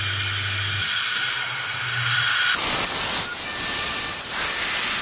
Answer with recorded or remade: recorded